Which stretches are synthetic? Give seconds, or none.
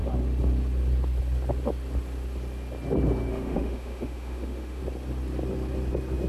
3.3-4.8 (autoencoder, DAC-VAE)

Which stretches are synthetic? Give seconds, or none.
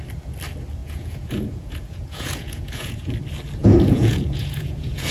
0.8-3.1 (vocoder, Vocos); 3.6-5.1